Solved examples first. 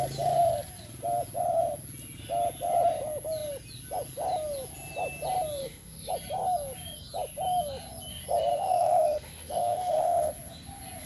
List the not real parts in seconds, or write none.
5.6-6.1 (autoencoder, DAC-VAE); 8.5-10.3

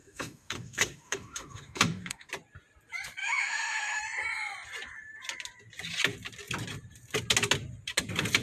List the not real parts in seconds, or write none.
0.0-2.3 (autoencoder, DAC-VAE); 3.2-4.0

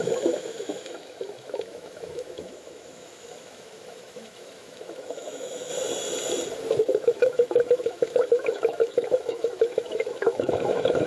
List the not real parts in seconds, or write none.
0.0-5.7 (autoencoder, DAC-VAE); 6.8-11.1